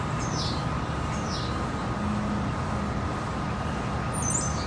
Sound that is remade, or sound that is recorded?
recorded